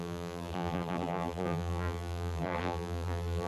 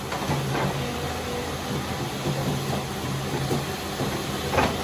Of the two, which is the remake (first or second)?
first